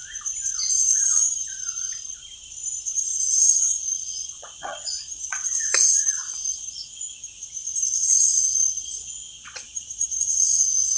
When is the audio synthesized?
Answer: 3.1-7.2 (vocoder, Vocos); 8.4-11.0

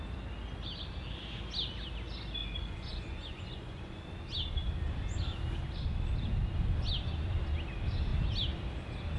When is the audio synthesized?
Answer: 2.4-4.0 (vocoder, Vocos)

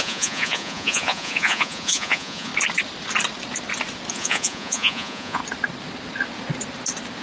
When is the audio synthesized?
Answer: 0.0-2.5 (vocoder, Vocos); 4.1-5.4